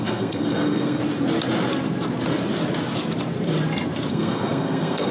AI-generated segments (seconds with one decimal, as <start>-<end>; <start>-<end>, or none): 0.0-1.0; 4.1-5.1

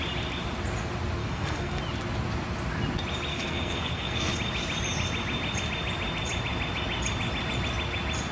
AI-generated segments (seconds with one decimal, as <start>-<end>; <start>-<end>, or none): 1.2-1.8; 3.3-4.3

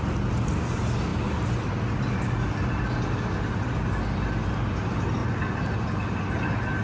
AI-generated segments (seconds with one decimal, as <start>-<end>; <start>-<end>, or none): none

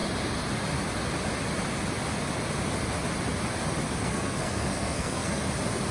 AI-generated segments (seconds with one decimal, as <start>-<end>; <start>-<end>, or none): 4.0-5.4

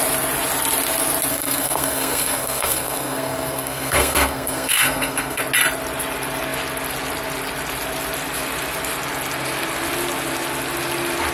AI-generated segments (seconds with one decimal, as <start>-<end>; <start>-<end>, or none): 1.3-5.4

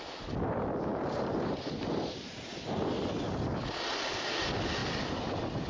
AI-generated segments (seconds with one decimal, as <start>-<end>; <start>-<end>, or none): none

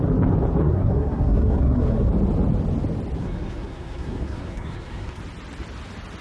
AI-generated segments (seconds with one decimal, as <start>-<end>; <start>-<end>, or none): 0.6-2.1; 3.2-5.2